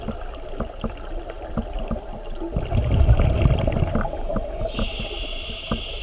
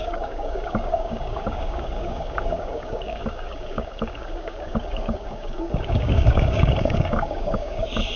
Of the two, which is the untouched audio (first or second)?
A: first